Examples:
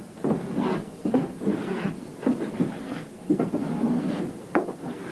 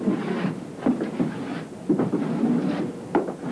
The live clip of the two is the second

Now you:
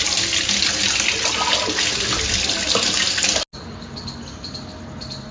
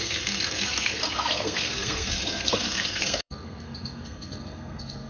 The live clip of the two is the first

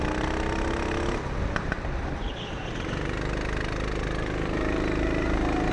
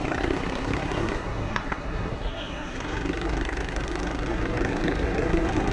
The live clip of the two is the first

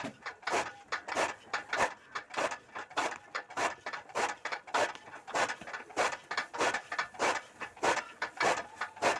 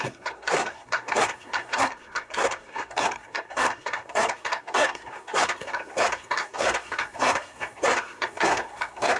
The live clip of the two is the first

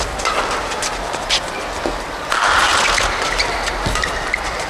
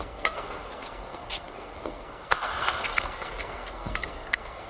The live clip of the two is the first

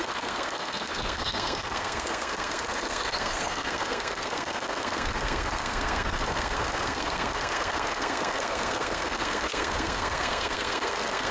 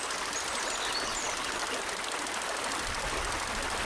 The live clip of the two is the second